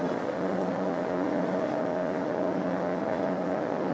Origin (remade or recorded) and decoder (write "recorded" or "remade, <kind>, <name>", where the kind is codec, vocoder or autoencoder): remade, vocoder, Vocos